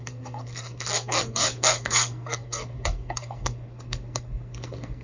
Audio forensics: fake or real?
fake